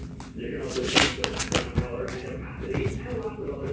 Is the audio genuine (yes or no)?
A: yes